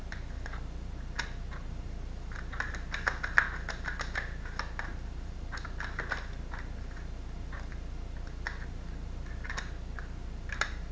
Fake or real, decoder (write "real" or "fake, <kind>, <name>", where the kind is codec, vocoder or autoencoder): real